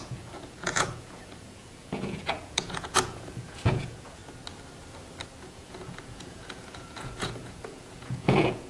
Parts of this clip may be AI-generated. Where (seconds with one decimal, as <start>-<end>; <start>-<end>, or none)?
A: 0.0-4.2; 5.4-8.7